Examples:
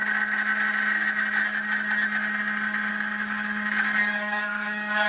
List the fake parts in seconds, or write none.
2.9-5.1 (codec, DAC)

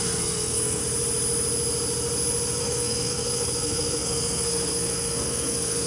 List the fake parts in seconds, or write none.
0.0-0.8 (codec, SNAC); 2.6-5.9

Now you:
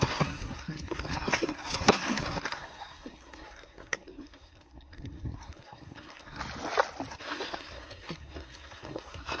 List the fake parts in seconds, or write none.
0.0-6.4 (codec, SNAC); 7.1-9.4